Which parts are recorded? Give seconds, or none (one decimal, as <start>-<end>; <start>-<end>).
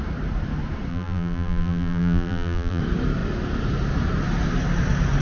0.0-0.9; 2.8-5.2